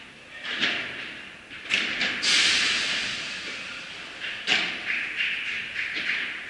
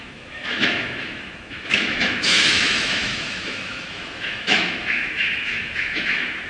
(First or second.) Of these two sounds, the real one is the first